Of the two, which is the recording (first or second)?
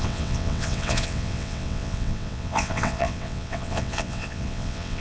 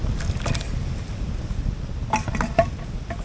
second